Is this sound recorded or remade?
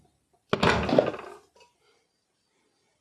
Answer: recorded